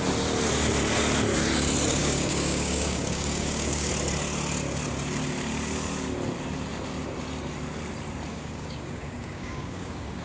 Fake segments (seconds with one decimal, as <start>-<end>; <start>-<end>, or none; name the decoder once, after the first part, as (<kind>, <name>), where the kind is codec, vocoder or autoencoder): 2.0-3.9 (codec, DAC); 8.3-10.2